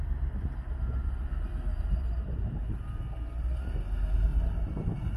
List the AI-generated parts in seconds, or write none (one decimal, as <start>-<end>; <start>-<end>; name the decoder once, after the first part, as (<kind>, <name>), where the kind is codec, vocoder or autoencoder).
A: 1.7-2.6 (vocoder, BigVGAN v2); 4.3-5.2